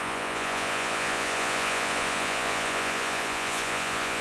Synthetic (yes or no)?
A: yes